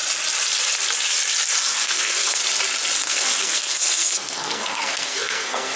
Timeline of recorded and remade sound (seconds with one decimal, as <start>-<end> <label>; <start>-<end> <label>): 0.0-1.6 recorded; 1.6-2.4 remade; 2.4-3.0 recorded; 3.0-5.8 remade